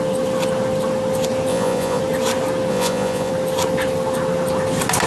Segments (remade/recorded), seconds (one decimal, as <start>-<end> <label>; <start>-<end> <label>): 0.0-1.5 recorded; 1.5-2.0 remade; 2.0-2.7 recorded; 2.7-3.3 remade; 3.3-5.1 recorded

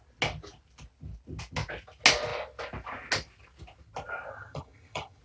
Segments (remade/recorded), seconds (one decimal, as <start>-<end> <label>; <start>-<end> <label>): 0.0-4.3 recorded; 4.3-5.2 remade

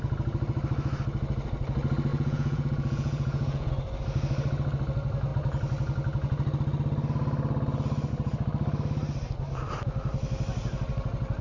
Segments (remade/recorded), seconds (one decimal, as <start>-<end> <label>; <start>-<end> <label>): 0.0-2.1 recorded; 2.1-3.7 remade; 3.7-11.4 recorded

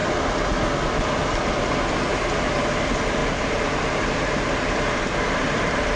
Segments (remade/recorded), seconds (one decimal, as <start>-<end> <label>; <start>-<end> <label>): 0.0-2.1 recorded; 2.1-2.8 remade; 2.8-3.2 recorded; 3.2-6.0 remade

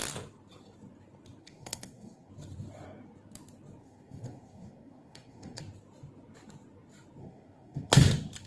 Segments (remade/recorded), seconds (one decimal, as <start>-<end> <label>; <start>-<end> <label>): 0.0-1.4 recorded; 1.4-2.3 remade; 2.3-3.8 recorded; 3.8-5.6 remade; 5.6-7.2 recorded; 7.2-8.0 remade; 8.0-8.5 recorded